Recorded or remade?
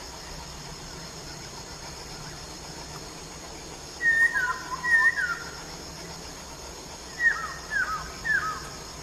recorded